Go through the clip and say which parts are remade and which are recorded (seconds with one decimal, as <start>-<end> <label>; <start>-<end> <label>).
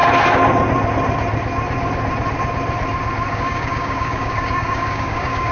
0.0-3.3 recorded; 3.3-5.5 remade